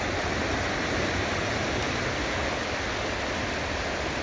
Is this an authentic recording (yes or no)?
yes